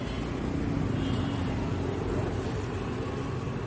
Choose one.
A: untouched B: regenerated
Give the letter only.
A